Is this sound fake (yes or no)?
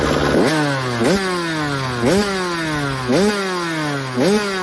no